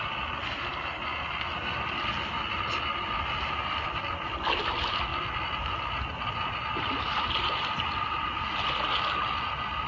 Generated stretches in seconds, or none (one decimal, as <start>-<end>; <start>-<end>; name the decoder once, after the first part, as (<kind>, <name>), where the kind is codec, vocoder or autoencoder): none